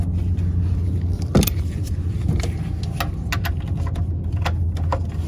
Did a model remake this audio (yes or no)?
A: no